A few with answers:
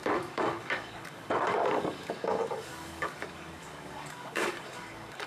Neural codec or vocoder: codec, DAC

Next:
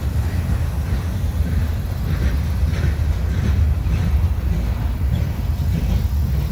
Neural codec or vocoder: none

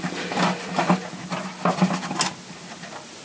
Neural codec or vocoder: none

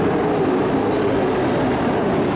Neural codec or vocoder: none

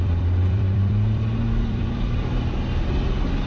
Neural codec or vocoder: vocoder, BigVGAN v2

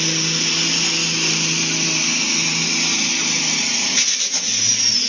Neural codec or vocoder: none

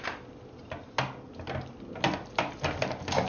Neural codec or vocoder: none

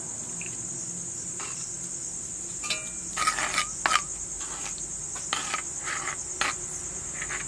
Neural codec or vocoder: none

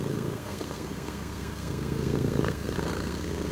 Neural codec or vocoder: codec, SNAC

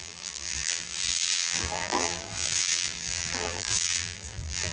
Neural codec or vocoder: vocoder, BigVGAN v2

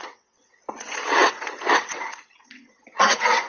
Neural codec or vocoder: vocoder, WaveNeXt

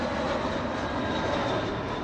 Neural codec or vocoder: none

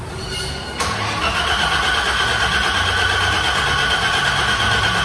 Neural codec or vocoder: none